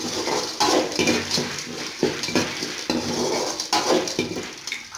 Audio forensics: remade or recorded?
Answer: recorded